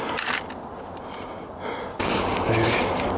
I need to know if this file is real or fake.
real